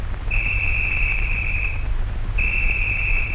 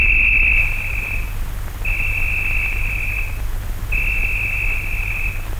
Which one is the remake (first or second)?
first